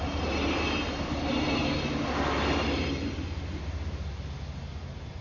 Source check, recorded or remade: recorded